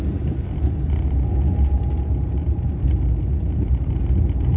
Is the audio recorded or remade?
recorded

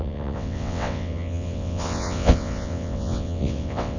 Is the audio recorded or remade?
remade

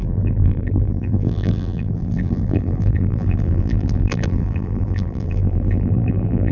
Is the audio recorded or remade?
remade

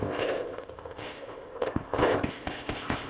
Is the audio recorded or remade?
remade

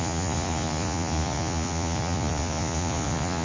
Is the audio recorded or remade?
remade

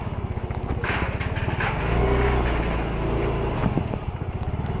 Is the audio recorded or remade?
recorded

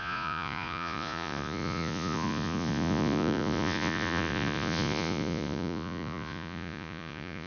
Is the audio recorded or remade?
remade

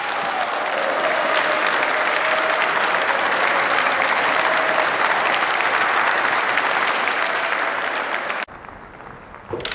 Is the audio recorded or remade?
recorded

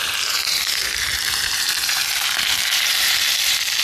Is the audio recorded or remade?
remade